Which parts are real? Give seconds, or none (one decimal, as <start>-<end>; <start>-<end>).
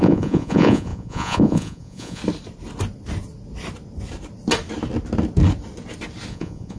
2.2-6.3